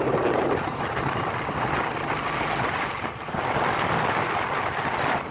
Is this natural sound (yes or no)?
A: yes